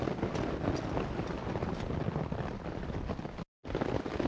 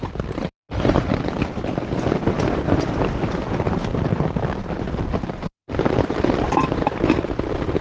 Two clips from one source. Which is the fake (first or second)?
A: second